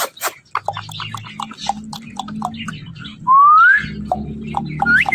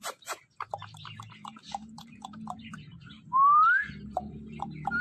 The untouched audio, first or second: first